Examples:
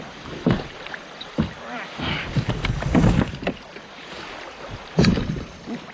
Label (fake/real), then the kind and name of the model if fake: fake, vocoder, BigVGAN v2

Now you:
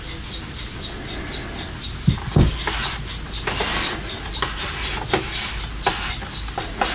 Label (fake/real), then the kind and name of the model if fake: real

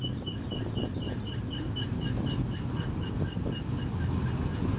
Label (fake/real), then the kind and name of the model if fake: real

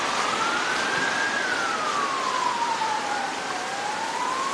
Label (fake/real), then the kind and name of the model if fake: real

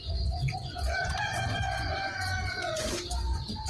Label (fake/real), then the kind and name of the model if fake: fake, vocoder, Vocos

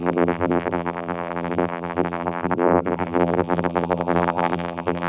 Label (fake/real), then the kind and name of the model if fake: fake, vocoder, BigVGAN v2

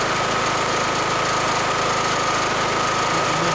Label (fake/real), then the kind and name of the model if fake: real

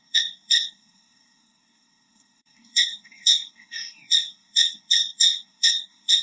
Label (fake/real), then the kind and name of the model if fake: fake, codec, SNAC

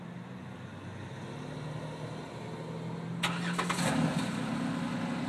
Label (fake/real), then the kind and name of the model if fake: real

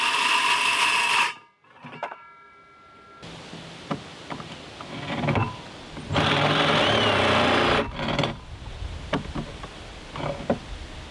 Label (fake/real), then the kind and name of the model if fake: real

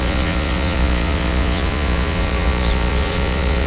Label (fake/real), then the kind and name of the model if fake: fake, vocoder, Vocos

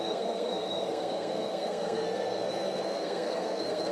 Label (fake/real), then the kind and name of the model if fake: fake, codec, SNAC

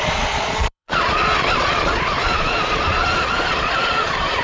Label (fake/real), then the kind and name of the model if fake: fake, vocoder, Vocos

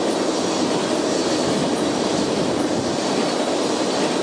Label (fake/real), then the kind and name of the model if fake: real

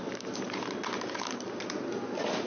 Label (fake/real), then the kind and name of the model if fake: real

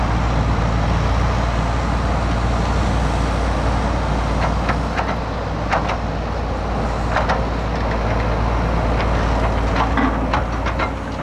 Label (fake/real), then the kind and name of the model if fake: real